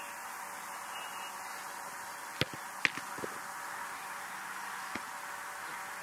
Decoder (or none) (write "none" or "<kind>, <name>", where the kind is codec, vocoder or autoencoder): none